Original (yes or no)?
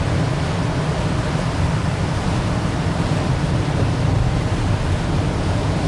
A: yes